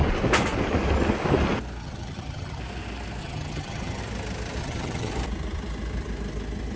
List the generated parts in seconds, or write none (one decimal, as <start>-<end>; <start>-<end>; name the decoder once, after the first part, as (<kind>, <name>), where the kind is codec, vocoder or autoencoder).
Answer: 1.8-2.6 (vocoder, HiFi-GAN); 3.2-4.0; 4.6-5.1